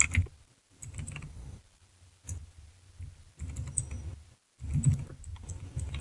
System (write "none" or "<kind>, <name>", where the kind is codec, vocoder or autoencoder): none